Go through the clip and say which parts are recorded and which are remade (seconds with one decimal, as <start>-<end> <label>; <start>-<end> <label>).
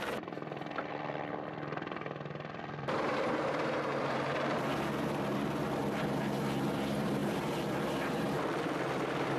0.0-5.8 remade; 5.8-6.7 recorded; 6.7-9.4 remade